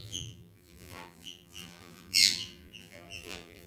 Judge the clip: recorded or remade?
remade